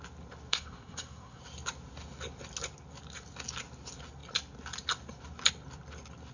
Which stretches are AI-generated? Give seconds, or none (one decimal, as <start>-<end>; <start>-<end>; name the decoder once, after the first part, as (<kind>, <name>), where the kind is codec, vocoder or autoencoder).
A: 0.5-1.4 (codec, SNAC)